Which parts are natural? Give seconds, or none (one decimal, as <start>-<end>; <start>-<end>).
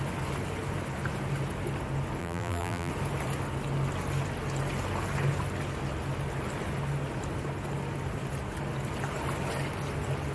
0.0-2.2; 2.9-10.3